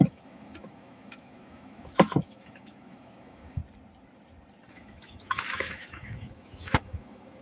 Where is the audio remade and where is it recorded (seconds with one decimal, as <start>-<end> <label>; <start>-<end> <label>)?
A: 0.0-3.6 remade; 3.6-4.7 recorded; 4.7-7.4 remade